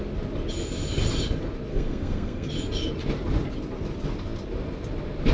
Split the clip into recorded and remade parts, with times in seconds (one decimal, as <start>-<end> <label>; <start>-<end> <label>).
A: 0.0-1.7 recorded; 1.7-2.5 remade; 2.5-5.3 recorded